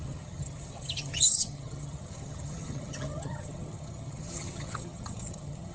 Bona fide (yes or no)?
no